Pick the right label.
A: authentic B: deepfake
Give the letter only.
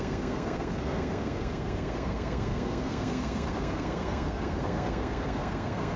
B